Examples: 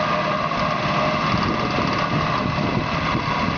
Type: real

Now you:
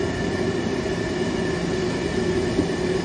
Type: real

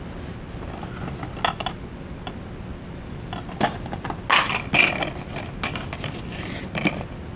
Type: real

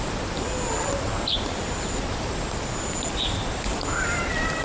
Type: real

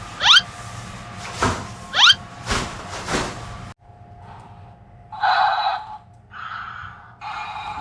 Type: real